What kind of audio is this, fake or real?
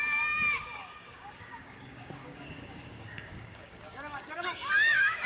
fake